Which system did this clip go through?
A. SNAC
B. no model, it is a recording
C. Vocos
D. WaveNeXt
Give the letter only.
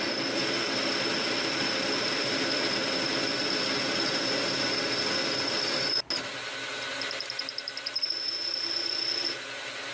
B